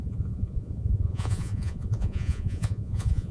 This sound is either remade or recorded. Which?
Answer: remade